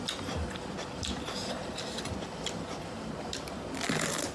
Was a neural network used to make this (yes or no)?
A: yes